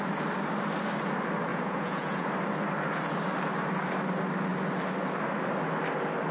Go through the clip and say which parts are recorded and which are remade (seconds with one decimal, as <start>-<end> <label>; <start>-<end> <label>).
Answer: 0.0-1.5 recorded; 1.5-2.3 remade; 2.3-6.3 recorded